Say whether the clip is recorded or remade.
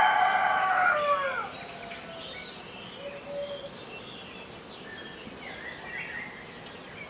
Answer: recorded